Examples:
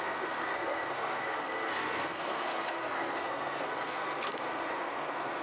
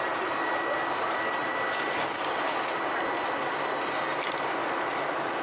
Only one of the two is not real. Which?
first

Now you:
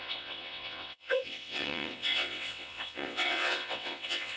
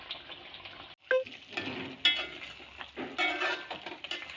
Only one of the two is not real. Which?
first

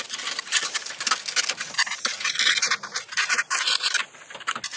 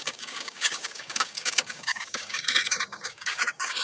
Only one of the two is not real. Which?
second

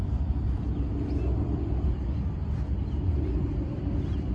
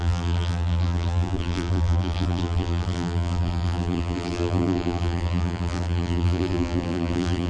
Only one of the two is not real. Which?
second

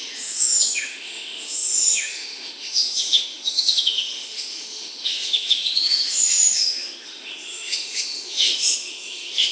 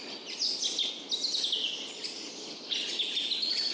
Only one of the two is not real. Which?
first